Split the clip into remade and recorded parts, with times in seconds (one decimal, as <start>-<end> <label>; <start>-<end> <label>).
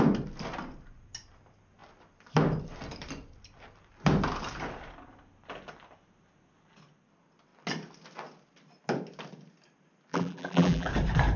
0.0-10.1 recorded; 10.1-10.9 remade; 10.9-11.4 recorded